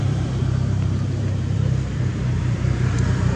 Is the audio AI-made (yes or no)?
yes